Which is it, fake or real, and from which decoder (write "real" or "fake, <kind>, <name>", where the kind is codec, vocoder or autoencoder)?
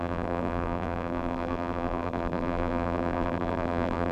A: fake, vocoder, BigVGAN v2